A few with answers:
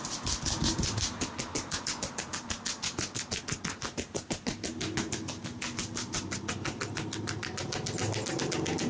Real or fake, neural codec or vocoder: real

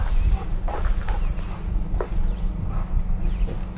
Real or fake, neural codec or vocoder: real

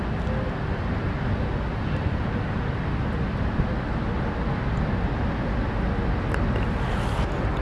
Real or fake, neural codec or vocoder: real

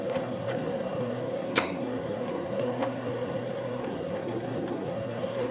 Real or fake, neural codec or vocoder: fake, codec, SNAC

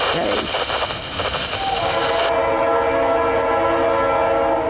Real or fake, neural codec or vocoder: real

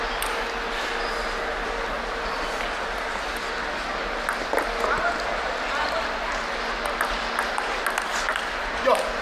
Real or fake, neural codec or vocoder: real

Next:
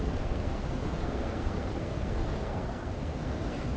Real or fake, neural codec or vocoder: fake, codec, SNAC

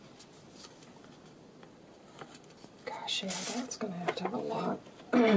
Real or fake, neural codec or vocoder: real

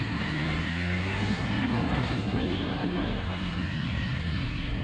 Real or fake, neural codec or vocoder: fake, codec, SNAC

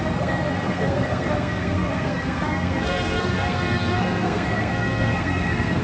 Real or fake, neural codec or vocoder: fake, codec, SNAC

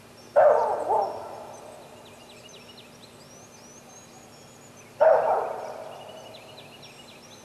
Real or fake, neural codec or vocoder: real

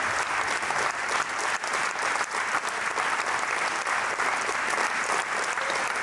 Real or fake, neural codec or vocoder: real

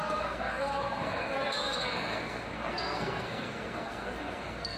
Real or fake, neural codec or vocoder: fake, codec, SNAC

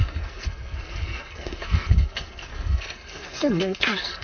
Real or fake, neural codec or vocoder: fake, codec, SNAC